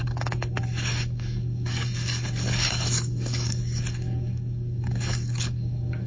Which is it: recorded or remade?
remade